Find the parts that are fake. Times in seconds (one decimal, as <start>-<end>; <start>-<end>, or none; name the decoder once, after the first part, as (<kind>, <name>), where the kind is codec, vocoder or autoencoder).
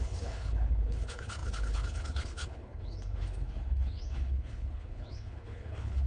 0.0-6.1 (codec, HILCodec)